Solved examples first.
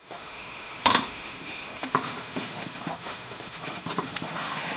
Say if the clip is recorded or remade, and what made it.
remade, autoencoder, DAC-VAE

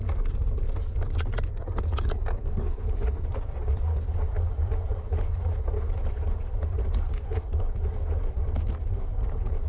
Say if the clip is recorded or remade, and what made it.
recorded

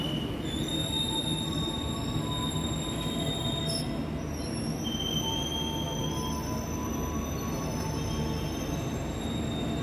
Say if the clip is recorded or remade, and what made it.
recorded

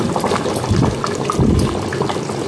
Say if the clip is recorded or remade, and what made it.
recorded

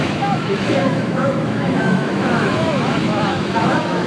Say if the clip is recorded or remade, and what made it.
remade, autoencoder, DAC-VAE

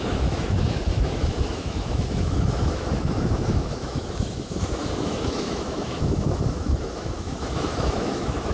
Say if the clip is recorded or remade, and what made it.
remade, autoencoder, DAC-VAE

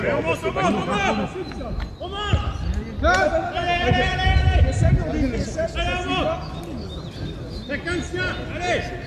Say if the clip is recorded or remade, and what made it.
recorded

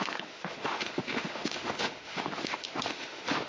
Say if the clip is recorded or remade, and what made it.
remade, autoencoder, DAC-VAE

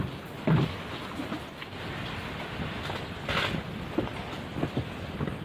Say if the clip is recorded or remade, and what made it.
recorded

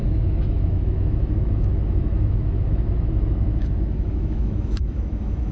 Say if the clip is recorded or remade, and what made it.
remade, autoencoder, DAC-VAE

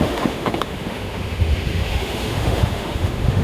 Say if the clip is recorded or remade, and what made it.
remade, autoencoder, DAC-VAE